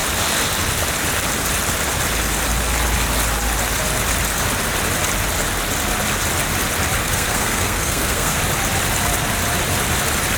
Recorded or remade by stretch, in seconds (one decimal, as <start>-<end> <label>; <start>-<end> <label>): 0.0-7.0 recorded; 7.0-8.4 remade; 8.4-10.4 recorded